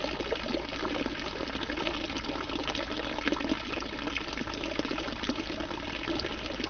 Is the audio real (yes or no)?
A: yes